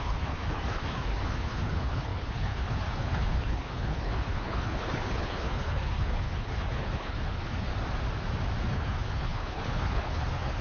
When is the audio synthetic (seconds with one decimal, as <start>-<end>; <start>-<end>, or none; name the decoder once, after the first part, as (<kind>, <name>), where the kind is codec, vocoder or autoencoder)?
0.0-7.7 (codec, HILCodec); 8.7-10.6